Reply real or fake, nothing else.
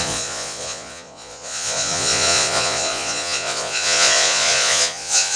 fake